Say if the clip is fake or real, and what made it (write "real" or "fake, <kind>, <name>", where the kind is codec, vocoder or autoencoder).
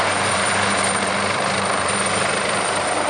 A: fake, vocoder, BigVGAN v2